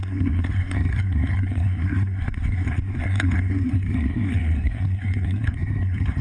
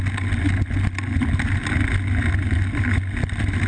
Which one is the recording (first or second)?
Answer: second